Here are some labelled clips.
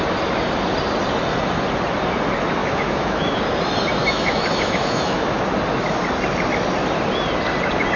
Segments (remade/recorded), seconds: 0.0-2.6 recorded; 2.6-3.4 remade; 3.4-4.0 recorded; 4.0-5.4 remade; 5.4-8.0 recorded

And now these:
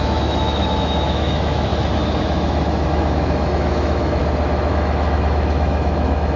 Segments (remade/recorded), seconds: 0.0-1.7 remade; 1.7-2.2 recorded; 2.2-4.2 remade; 4.2-4.7 recorded; 4.7-6.4 remade